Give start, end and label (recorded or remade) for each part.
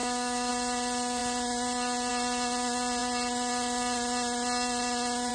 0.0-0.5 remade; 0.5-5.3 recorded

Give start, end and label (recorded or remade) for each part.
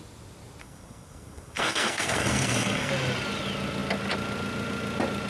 0.0-0.6 recorded; 0.6-2.9 remade; 2.9-5.3 recorded